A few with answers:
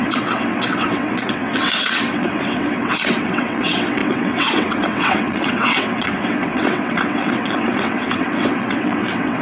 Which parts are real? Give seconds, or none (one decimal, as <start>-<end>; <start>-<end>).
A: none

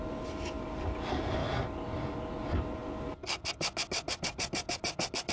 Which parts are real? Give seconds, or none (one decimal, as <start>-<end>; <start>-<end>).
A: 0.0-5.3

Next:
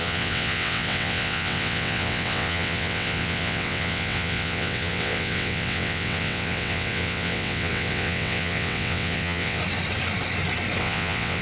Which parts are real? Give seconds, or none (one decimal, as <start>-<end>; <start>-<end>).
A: 9.6-10.8